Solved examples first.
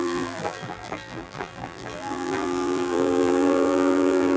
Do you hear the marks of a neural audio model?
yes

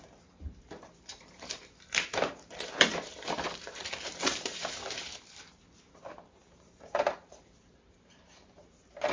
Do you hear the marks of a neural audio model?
yes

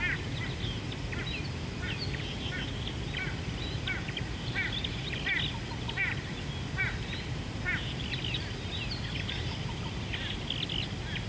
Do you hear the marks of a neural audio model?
no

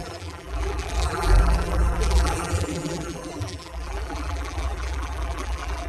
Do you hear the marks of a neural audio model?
yes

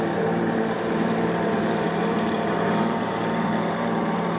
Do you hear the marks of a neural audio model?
yes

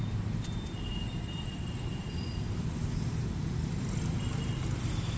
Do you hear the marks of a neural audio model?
no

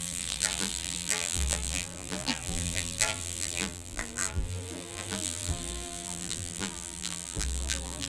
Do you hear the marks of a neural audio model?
yes